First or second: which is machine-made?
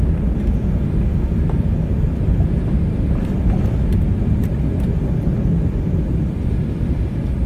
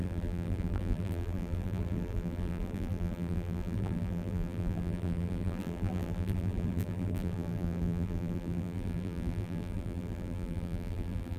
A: second